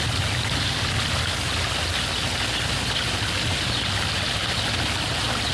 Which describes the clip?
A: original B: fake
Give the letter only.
A